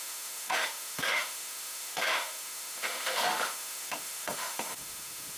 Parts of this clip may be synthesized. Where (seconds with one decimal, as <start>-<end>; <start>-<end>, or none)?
0.0-5.4